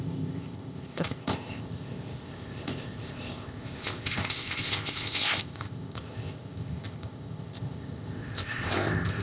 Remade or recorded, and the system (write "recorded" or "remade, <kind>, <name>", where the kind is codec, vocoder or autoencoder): remade, codec, ZipCodec